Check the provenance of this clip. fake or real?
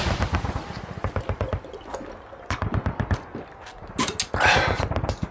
real